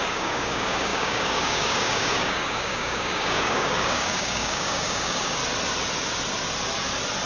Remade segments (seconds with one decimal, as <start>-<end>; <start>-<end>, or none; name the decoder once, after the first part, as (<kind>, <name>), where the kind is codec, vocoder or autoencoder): 0.0-5.4 (codec, DAC)